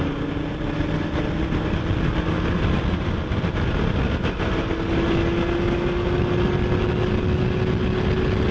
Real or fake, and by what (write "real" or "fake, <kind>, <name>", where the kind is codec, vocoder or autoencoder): real